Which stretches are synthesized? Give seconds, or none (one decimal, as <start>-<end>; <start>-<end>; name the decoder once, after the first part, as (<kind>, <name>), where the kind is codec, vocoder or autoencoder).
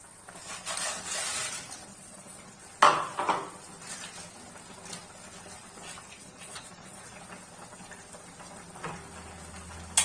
1.9-2.6 (vocoder, Vocos); 6.2-7.2